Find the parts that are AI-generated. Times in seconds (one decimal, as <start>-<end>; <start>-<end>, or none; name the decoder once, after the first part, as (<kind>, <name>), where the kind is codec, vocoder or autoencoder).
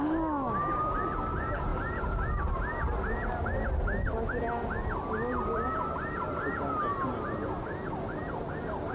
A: none